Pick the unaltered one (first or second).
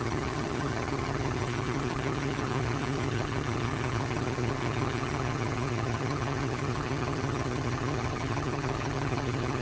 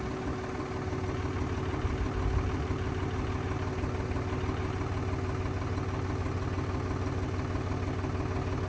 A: second